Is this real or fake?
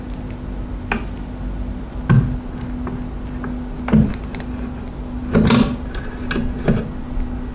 real